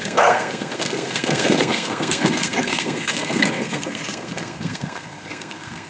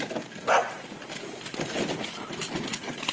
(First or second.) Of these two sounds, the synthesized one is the first